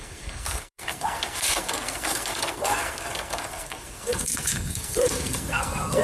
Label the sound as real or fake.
fake